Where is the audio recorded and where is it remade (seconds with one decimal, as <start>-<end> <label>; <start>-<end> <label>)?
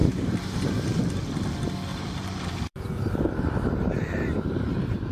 0.0-1.0 remade; 1.0-1.9 recorded; 1.9-5.1 remade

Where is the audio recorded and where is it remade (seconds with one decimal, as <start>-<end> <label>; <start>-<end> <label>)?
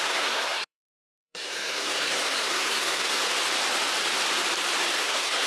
0.0-3.2 remade; 3.2-5.0 recorded; 5.0-5.5 remade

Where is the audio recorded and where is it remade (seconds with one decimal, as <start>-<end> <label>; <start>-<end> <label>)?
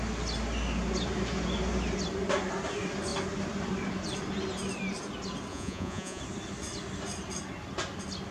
0.0-5.5 recorded; 5.5-6.2 remade; 6.2-8.3 recorded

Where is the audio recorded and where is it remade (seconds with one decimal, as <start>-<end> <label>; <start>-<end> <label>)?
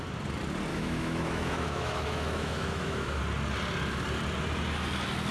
0.0-0.7 recorded; 0.7-3.2 remade; 3.2-5.3 recorded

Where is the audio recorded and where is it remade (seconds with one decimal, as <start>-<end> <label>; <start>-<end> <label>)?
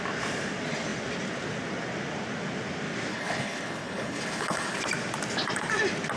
0.0-3.1 recorded; 3.1-4.8 remade; 4.8-6.2 recorded